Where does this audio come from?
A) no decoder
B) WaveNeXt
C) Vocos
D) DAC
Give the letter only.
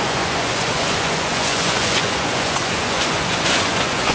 C